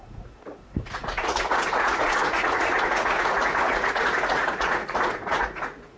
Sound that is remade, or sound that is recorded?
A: remade